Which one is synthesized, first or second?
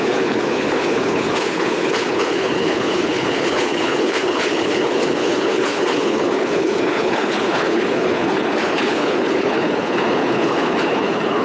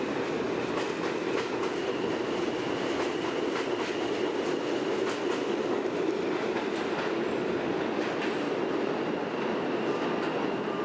first